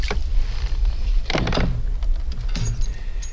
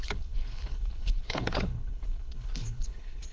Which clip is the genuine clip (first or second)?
first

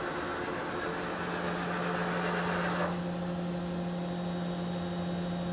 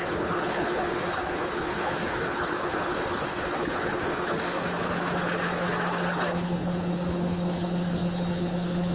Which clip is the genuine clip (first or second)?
first